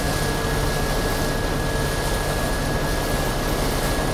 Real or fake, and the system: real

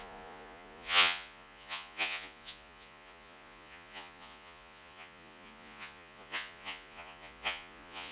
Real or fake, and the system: fake, vocoder, Vocos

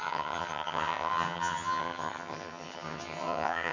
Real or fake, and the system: fake, vocoder, HiFi-GAN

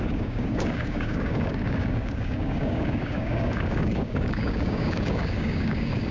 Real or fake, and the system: fake, codec, DAC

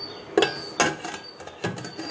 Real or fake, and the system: real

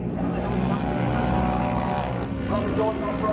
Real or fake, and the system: real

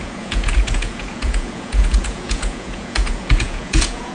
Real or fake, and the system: fake, vocoder, Vocos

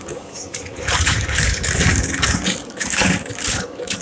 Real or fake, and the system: fake, codec, DAC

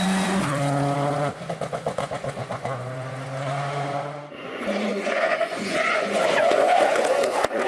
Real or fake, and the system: fake, vocoder, Vocos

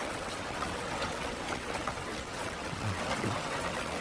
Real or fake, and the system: fake, vocoder, WaveNeXt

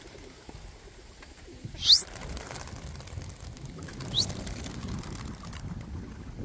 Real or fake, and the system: real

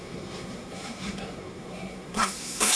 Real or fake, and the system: fake, codec, SNAC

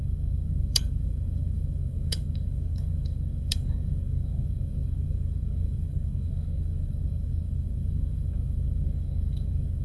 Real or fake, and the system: fake, codec, DAC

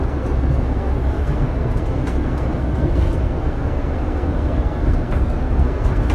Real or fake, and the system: fake, codec, SNAC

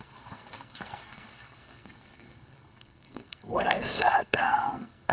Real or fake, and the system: fake, codec, SNAC